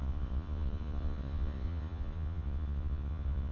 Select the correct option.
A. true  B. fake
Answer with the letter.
B